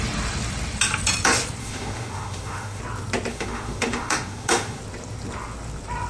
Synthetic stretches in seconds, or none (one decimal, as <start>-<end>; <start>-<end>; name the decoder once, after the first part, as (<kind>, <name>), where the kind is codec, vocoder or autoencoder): 1.6-2.8 (autoencoder, DAC-VAE); 3.3-4.8